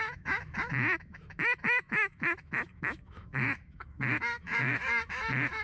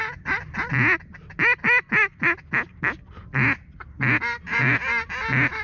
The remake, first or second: first